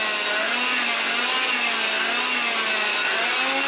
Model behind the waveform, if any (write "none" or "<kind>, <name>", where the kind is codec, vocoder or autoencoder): none